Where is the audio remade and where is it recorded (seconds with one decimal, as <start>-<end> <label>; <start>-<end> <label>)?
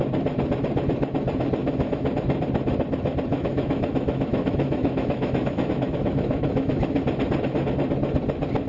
0.0-1.6 recorded; 1.6-2.1 remade; 2.1-3.3 recorded; 3.3-7.0 remade; 7.0-8.7 recorded